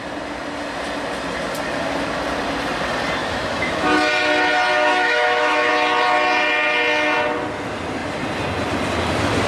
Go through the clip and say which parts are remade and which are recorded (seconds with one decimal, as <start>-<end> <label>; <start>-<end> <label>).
0.0-3.2 recorded; 3.2-3.8 remade; 3.8-4.9 recorded; 4.9-5.7 remade; 5.7-9.5 recorded